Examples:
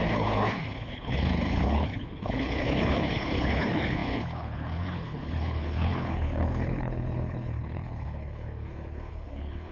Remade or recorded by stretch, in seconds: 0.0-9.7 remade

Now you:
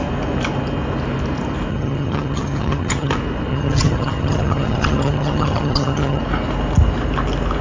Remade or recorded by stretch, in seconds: 0.0-1.7 recorded; 1.7-3.1 remade; 3.1-3.5 recorded; 3.5-6.2 remade; 6.2-7.6 recorded

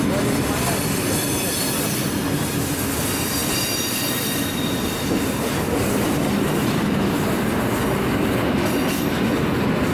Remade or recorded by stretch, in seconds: 0.0-9.9 recorded

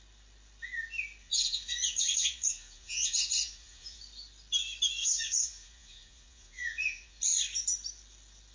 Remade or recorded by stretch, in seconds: 0.0-1.2 recorded; 1.2-4.0 remade; 4.0-5.0 recorded; 5.0-7.2 remade; 7.2-8.5 recorded

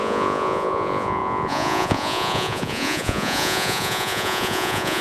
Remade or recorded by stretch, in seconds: 0.0-5.0 remade

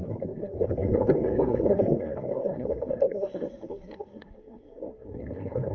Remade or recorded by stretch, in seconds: 0.0-5.7 remade

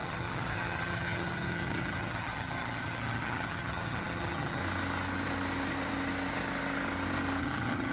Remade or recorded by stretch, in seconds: 0.0-4.6 remade; 4.6-7.4 recorded; 7.4-7.9 remade